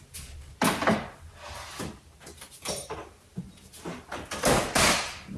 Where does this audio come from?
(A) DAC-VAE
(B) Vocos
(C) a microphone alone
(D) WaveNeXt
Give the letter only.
C